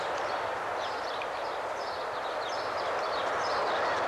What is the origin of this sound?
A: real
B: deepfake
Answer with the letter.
A